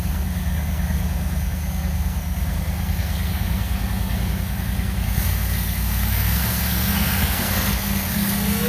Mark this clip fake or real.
fake